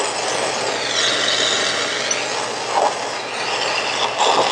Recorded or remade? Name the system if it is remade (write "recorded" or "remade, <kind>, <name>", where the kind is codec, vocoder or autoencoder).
recorded